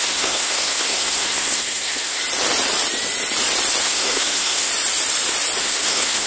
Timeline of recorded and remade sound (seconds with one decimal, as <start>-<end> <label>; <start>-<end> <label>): 0.0-2.2 remade; 2.2-3.8 recorded; 3.8-4.7 remade; 4.7-5.6 recorded; 5.6-6.3 remade